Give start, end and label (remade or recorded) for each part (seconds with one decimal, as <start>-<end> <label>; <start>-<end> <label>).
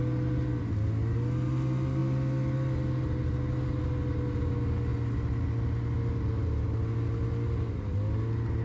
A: 0.0-8.6 recorded